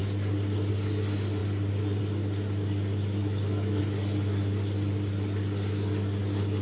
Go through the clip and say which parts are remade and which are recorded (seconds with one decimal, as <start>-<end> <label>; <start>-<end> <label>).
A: 0.0-3.2 recorded; 3.2-3.8 remade; 3.8-6.6 recorded